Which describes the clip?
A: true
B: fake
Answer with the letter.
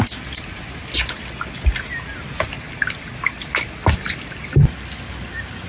A